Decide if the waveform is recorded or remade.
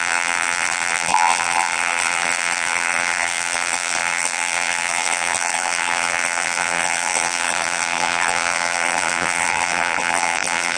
remade